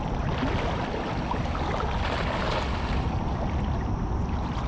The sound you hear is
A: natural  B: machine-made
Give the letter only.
A